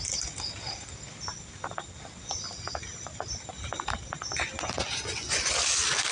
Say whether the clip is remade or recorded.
recorded